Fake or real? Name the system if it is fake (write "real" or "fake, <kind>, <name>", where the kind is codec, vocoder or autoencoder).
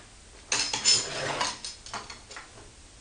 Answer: real